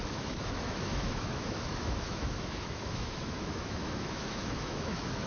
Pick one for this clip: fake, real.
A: fake